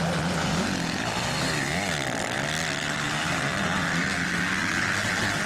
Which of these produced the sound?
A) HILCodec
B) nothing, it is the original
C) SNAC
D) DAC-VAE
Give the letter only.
B